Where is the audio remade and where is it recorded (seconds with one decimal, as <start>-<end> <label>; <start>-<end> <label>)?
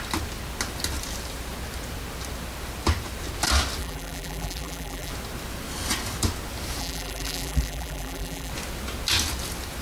0.0-3.8 recorded; 3.8-5.1 remade; 5.1-6.8 recorded; 6.8-8.5 remade; 8.5-9.8 recorded